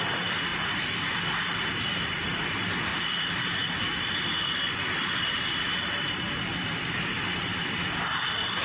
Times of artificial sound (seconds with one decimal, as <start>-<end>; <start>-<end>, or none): 0.0-0.5; 1.7-2.9; 4.4-8.6